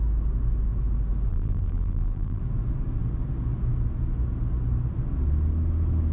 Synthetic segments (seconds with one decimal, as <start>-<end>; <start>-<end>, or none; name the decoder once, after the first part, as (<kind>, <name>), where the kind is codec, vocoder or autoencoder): 1.3-2.4 (vocoder, BigVGAN v2)